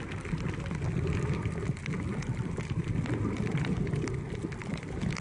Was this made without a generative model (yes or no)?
yes